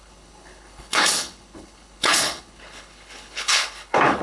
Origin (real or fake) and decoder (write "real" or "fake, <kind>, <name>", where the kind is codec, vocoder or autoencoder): fake, codec, HILCodec